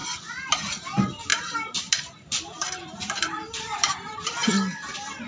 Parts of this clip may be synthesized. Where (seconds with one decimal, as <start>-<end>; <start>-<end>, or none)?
1.3-4.5